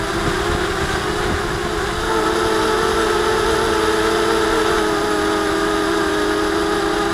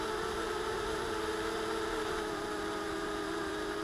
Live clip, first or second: first